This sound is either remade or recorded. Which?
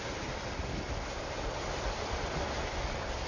recorded